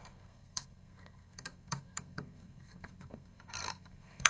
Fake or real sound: fake